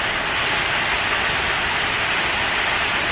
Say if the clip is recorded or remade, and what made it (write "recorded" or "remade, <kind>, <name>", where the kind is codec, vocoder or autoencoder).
recorded